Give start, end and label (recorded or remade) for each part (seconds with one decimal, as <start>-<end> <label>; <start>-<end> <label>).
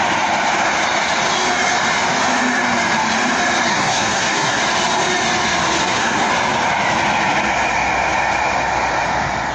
0.0-3.7 recorded; 3.7-4.6 remade; 4.6-5.8 recorded; 5.8-6.3 remade; 6.3-9.5 recorded